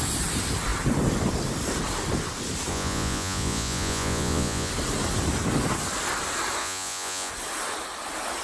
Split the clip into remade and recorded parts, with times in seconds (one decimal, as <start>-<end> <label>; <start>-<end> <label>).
0.0-2.7 recorded; 2.7-4.7 remade; 4.7-6.6 recorded; 6.6-7.3 remade; 7.3-8.4 recorded